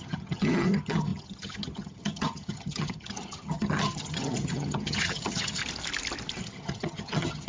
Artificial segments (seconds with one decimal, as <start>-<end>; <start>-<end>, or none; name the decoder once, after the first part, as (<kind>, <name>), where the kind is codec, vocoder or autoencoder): 0.0-5.6 (vocoder, HiFi-GAN); 6.4-7.5